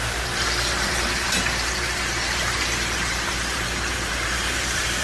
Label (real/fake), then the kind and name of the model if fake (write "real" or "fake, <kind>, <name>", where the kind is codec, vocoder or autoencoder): fake, vocoder, BigVGAN v2